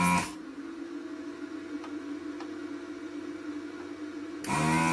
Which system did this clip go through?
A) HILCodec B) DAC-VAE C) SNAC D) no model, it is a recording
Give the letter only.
D